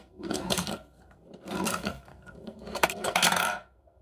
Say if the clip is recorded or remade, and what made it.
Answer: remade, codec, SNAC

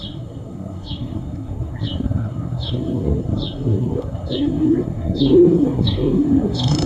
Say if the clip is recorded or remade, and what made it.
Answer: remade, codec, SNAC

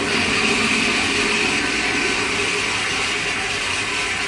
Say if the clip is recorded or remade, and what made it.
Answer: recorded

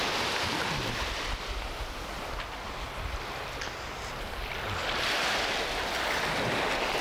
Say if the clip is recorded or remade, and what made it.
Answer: recorded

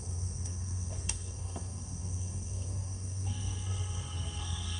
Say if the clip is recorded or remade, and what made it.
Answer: remade, codec, SNAC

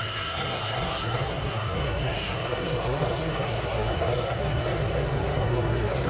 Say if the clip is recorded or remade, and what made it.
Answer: remade, codec, SNAC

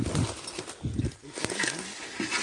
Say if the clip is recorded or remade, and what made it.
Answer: recorded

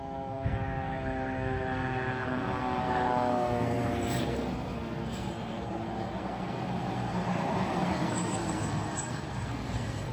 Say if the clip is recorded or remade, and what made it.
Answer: remade, codec, SNAC